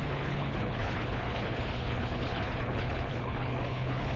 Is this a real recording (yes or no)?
no